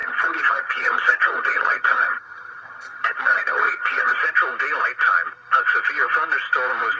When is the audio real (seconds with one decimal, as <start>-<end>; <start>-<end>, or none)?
4.2-7.0